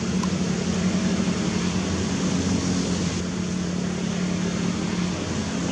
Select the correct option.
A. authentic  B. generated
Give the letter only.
A